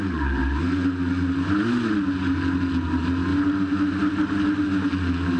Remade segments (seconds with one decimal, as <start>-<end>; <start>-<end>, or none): none